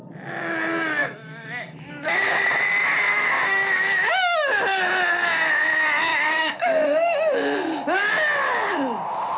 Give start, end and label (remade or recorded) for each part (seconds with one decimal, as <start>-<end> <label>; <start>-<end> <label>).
0.0-1.0 recorded; 1.0-2.4 remade; 2.4-3.1 recorded; 3.1-4.9 remade; 4.9-6.1 recorded; 6.1-8.1 remade; 8.1-9.4 recorded